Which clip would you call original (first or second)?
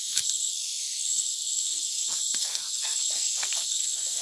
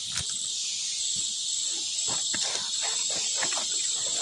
second